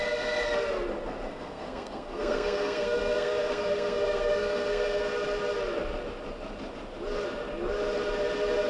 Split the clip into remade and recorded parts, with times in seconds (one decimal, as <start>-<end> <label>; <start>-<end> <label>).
0.0-1.3 recorded; 1.3-5.0 remade; 5.0-8.7 recorded